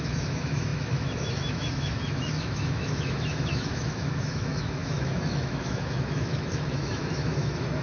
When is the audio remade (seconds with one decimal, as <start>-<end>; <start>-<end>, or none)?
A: 0.0-7.8